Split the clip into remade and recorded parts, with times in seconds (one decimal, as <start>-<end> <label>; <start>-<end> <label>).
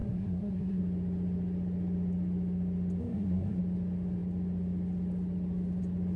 0.0-0.8 remade; 0.8-3.0 recorded; 3.0-3.6 remade; 3.6-6.2 recorded